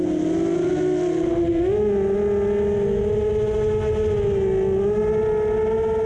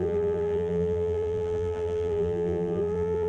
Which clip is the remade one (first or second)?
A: second